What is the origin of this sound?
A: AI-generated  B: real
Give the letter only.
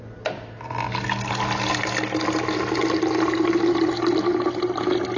B